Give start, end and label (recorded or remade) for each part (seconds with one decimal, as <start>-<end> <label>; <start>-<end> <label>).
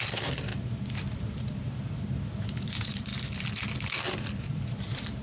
0.0-0.5 remade; 0.5-1.1 recorded; 1.1-3.1 remade; 3.1-4.4 recorded; 4.4-5.2 remade